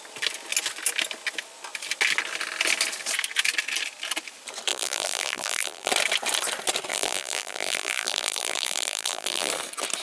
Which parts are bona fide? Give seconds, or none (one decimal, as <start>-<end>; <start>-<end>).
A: 0.0-4.7; 5.9-6.9; 9.5-10.0